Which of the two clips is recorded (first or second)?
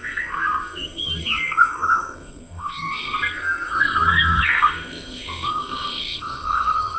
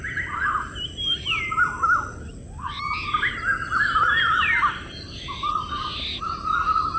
second